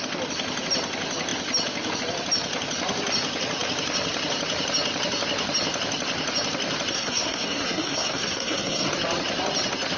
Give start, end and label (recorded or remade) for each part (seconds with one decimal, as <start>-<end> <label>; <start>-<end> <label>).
0.0-6.9 recorded; 6.9-8.9 remade; 8.9-10.0 recorded